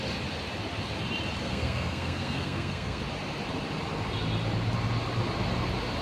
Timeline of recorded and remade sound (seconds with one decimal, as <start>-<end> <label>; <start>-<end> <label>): 0.0-1.4 recorded; 1.4-3.0 remade; 3.0-6.0 recorded

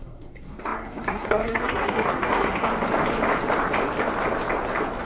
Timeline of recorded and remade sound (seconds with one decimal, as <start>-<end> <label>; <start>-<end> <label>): 0.0-2.7 remade; 2.7-5.0 recorded

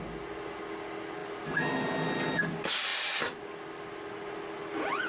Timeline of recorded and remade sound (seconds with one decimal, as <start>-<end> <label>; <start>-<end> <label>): 0.0-5.1 recorded

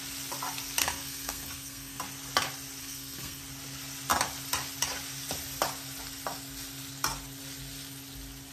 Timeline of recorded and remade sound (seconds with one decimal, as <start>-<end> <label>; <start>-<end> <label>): 0.0-0.8 recorded; 0.8-2.0 remade; 2.0-2.8 recorded; 2.8-3.4 remade; 3.4-8.5 recorded

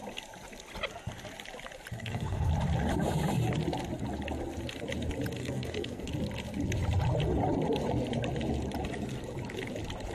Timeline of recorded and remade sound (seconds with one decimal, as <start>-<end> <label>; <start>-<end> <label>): 0.0-1.9 recorded; 1.9-2.5 remade; 2.5-5.4 recorded; 5.4-6.1 remade; 6.1-10.1 recorded

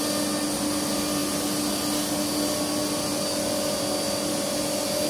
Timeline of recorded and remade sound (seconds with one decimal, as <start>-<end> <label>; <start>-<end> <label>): 0.0-5.1 recorded

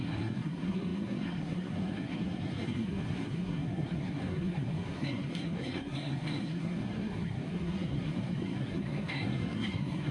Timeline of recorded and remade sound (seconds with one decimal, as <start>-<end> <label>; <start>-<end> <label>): 0.0-10.1 remade